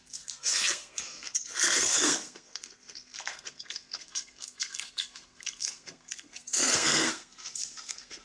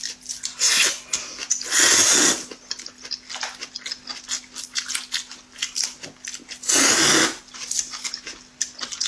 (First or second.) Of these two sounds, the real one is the second